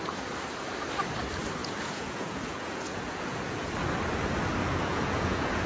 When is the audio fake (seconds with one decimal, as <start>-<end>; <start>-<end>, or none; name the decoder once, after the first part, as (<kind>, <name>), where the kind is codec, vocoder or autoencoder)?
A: 1.6-3.7 (vocoder, Vocos); 4.6-5.7